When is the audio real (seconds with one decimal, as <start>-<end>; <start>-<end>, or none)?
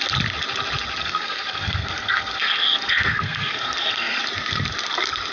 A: 0.0-1.0; 4.2-5.3